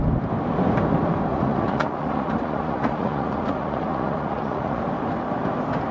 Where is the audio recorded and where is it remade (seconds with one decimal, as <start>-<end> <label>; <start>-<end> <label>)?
0.0-1.3 recorded; 1.3-4.8 remade; 4.8-5.9 recorded

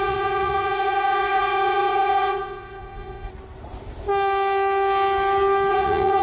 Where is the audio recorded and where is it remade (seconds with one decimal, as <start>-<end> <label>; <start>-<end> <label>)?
0.0-3.3 remade; 3.3-5.7 recorded; 5.7-6.2 remade

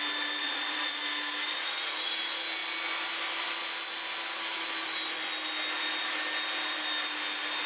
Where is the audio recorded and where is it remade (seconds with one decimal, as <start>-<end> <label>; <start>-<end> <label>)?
0.0-0.4 recorded; 0.4-1.0 remade; 1.0-1.5 recorded; 1.5-2.1 remade; 2.1-7.7 recorded

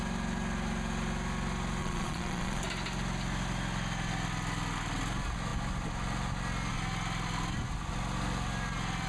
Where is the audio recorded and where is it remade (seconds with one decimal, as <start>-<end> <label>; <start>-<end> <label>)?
0.0-1.8 recorded; 1.8-2.6 remade; 2.6-9.1 recorded